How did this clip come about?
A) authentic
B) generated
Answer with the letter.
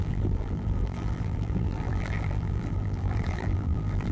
B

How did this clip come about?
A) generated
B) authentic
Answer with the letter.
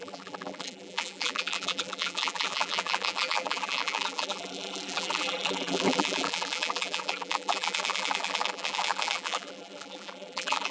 A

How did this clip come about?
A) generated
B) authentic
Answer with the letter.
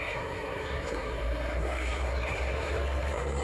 A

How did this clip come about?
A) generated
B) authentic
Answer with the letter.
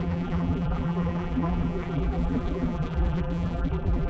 A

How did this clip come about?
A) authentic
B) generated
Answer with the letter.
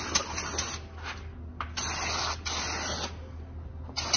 A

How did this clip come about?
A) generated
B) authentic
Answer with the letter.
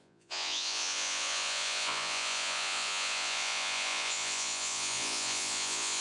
A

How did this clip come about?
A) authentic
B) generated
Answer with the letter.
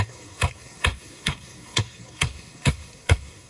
B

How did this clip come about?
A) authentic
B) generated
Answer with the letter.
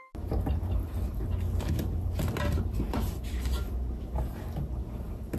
A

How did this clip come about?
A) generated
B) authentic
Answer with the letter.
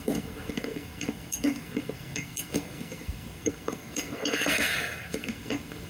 A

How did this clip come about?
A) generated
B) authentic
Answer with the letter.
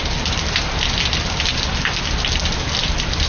B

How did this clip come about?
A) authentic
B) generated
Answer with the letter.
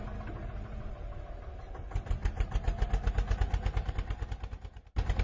A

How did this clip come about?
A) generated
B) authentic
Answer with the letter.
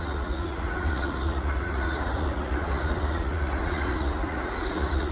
A